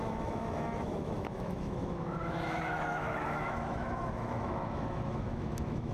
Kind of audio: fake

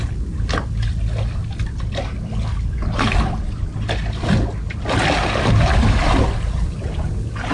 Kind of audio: real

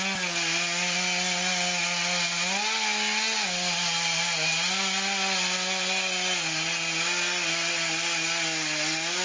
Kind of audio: real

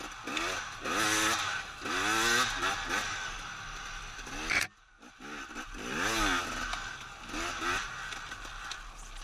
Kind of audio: real